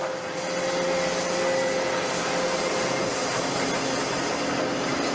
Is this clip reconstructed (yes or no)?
no